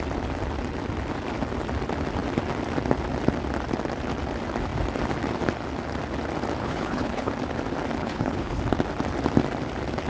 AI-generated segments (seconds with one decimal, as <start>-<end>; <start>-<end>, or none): 6.6-7.3; 8.0-8.6